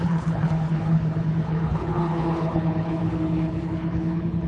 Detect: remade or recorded remade